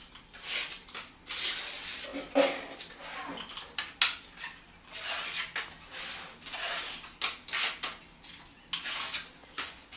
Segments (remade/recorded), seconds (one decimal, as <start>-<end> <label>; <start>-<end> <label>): 0.0-9.4 recorded; 9.4-10.0 remade